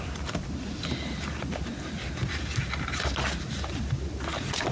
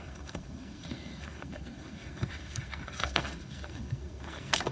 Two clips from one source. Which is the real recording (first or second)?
first